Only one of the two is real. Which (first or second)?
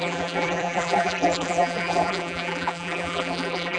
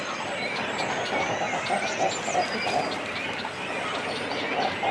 second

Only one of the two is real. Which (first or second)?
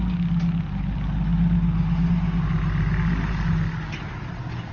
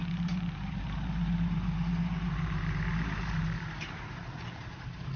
first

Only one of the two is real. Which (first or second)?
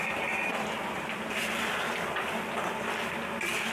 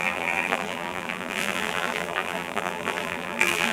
first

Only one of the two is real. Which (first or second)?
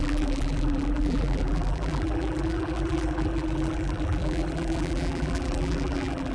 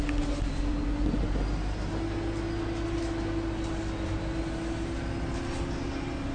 second